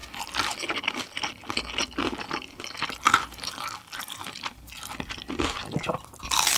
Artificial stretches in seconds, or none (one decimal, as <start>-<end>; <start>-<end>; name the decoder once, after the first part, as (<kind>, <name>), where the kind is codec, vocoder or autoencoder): 4.0-6.6 (vocoder, BigVGAN v2)